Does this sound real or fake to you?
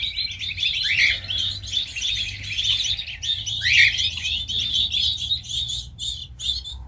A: fake